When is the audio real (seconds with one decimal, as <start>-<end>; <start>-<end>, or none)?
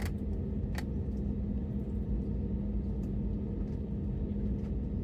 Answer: 0.0-5.0